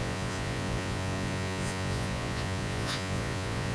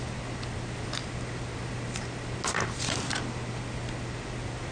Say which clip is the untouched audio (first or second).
second